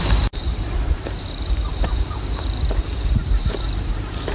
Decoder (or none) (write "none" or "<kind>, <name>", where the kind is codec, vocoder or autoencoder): vocoder, BigVGAN v2